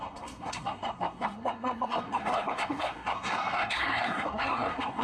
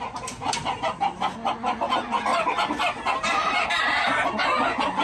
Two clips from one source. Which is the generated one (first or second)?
first